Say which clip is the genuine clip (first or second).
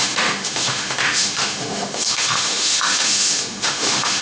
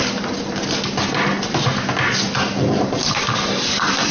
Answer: second